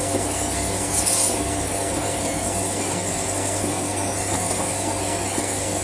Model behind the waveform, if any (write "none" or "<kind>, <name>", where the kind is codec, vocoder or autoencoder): codec, SNAC